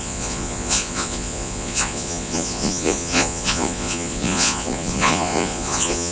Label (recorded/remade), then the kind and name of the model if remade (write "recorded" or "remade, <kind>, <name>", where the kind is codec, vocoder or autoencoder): remade, vocoder, Vocos